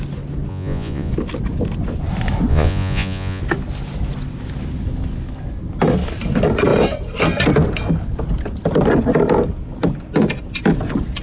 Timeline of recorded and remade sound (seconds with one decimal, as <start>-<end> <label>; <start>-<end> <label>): 0.0-0.5 recorded; 0.5-1.1 remade; 1.1-2.5 recorded; 2.5-3.4 remade; 3.4-11.2 recorded